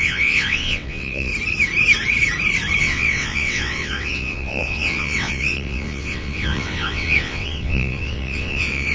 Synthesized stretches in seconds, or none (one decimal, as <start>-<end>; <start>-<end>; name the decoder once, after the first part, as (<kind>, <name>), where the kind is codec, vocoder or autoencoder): 0.0-1.3 (vocoder, WaveNeXt); 2.8-8.9

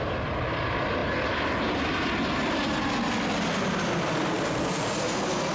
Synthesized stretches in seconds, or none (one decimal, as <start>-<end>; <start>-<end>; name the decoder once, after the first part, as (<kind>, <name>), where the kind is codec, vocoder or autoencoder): none

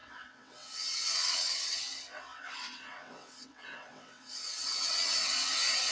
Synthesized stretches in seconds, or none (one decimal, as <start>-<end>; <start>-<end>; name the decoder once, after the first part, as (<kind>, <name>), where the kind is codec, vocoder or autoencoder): 0.0-5.9 (vocoder, WaveNeXt)